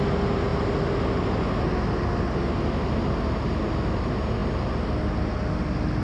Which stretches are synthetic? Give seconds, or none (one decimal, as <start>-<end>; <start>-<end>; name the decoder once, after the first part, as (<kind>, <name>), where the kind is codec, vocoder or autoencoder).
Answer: none